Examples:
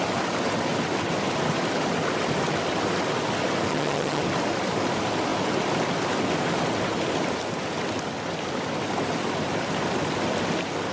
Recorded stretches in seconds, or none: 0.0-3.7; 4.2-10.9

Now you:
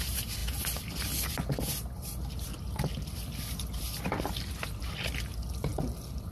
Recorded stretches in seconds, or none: 0.0-5.7

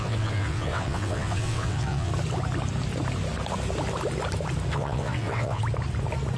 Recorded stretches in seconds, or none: 2.1-4.7; 5.6-6.4

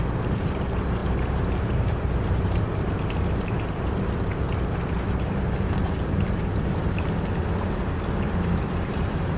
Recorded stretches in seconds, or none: none